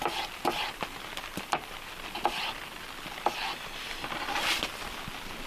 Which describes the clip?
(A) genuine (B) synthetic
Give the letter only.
A